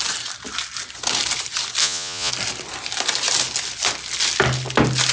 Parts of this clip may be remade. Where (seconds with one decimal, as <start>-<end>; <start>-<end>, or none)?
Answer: 1.8-2.3